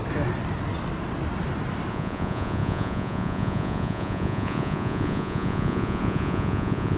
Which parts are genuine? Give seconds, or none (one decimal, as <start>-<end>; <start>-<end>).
0.0-1.9

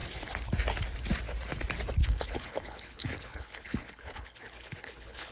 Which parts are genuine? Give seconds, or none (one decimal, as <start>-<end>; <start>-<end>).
0.0-2.0

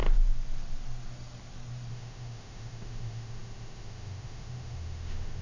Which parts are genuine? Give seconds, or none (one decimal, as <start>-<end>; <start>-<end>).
0.0-1.9

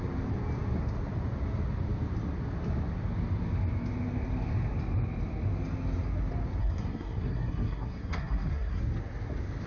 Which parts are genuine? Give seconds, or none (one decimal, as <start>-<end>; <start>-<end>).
0.0-6.6; 8.8-9.7

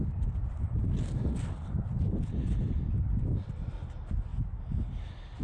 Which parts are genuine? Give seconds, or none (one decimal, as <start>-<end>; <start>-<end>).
0.0-5.4

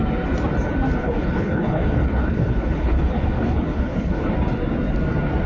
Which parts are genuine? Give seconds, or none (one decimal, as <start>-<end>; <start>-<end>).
0.0-1.0; 4.3-5.5